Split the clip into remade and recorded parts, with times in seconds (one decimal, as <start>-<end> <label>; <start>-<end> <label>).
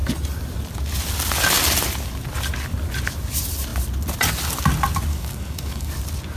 0.0-5.1 recorded; 5.1-5.9 remade; 5.9-6.4 recorded